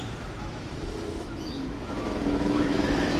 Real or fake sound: fake